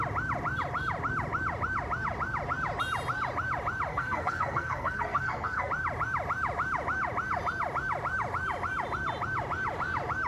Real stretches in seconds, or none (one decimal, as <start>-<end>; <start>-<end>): 0.0-3.9; 5.7-10.3